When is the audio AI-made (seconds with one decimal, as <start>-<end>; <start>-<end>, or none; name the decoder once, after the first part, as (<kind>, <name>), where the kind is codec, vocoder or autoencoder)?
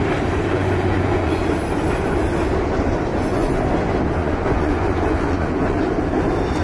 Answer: 0.5-1.4 (vocoder, Vocos); 3.1-3.6; 4.2-5.9